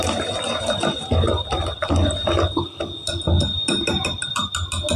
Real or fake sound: real